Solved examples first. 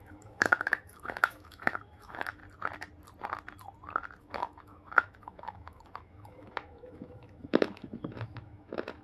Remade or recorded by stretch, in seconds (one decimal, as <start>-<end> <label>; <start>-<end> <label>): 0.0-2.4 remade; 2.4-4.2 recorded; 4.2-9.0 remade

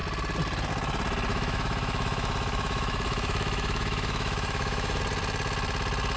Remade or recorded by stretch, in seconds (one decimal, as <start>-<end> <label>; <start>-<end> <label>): 0.0-1.3 recorded; 1.3-5.0 remade; 5.0-6.2 recorded

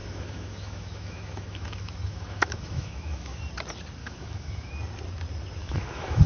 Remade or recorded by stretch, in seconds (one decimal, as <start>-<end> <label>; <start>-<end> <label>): 0.0-3.4 remade; 3.4-4.0 recorded; 4.0-4.7 remade; 4.7-5.6 recorded; 5.6-6.3 remade